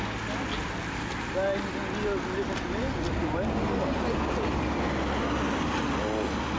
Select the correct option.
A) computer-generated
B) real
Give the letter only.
B